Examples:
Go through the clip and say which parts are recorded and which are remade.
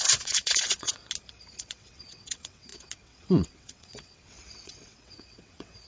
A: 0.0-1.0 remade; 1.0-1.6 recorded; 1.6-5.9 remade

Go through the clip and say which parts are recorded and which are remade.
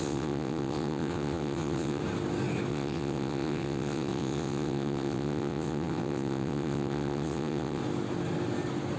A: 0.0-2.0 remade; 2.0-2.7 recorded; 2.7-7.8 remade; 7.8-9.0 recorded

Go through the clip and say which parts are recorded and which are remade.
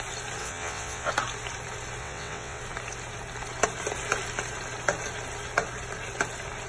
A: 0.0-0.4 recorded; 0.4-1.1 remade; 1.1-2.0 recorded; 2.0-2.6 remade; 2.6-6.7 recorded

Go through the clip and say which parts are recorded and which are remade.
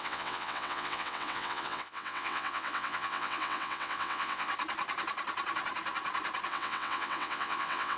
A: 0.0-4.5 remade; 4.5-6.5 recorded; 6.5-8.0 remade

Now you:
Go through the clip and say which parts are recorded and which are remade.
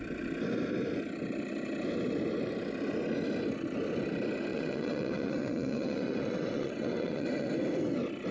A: 0.0-4.5 recorded; 4.5-7.5 remade; 7.5-8.3 recorded